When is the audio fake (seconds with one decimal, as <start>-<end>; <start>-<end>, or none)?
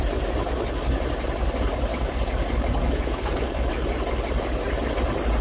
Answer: 1.9-3.7